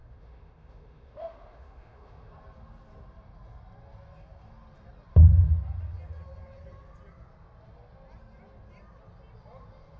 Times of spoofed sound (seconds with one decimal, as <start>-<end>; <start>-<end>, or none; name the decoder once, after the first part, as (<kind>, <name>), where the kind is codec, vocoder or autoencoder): 0.0-2.3 (autoencoder, DAC-VAE)